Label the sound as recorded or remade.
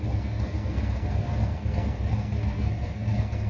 remade